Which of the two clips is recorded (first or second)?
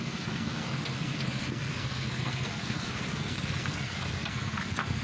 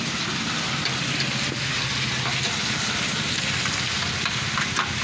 second